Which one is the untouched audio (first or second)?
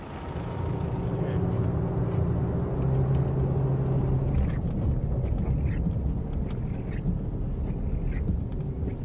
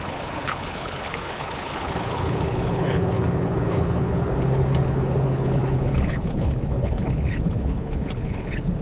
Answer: first